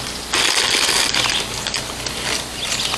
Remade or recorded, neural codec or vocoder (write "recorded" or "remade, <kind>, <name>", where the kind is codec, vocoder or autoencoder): remade, vocoder, BigVGAN v2